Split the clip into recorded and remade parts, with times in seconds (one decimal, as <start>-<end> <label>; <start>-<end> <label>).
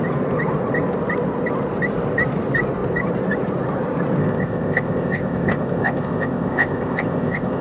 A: 0.0-4.2 recorded; 4.2-7.6 remade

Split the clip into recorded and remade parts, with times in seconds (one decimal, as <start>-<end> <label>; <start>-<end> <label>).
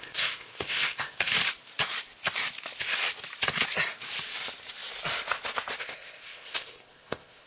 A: 0.0-1.3 remade; 1.3-5.8 recorded; 5.8-7.5 remade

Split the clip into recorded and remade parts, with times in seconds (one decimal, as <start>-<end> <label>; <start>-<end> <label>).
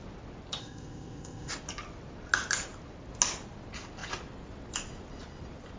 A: 0.0-0.6 recorded; 0.6-1.5 remade; 1.5-5.8 recorded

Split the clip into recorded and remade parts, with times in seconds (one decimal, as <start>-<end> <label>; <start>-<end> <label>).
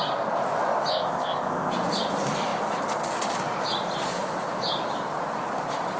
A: 0.0-0.9 recorded; 0.9-1.7 remade; 1.7-6.0 recorded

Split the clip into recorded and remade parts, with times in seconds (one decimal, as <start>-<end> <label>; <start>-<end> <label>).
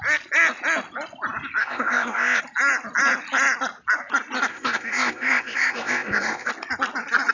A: 0.0-1.6 recorded; 1.6-2.4 remade; 2.4-4.5 recorded; 4.5-6.5 remade; 6.5-7.3 recorded